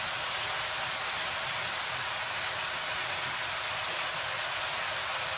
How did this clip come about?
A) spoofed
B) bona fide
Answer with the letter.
B